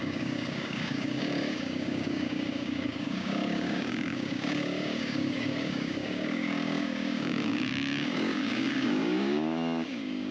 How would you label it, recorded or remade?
remade